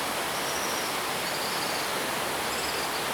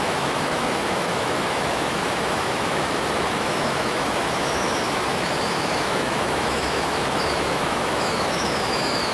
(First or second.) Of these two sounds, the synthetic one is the second